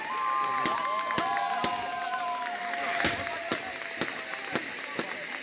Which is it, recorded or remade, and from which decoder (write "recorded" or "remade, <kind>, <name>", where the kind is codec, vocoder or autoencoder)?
recorded